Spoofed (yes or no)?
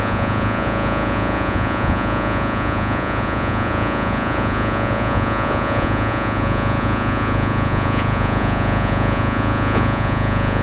yes